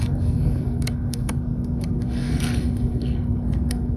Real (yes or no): no